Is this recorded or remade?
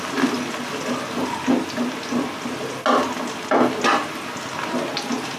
recorded